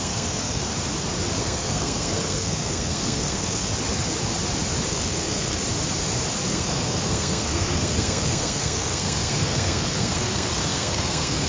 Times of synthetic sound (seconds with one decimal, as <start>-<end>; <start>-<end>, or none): 0.0-0.7; 1.4-3.7; 4.9-5.6; 6.5-11.5